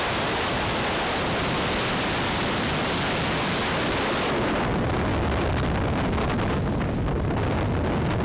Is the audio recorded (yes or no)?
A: yes